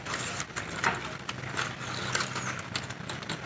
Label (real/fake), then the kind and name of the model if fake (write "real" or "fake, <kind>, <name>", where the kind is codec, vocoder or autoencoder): real